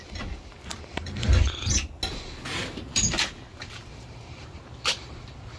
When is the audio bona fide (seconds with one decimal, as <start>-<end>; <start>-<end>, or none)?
0.0-3.5; 5.1-5.6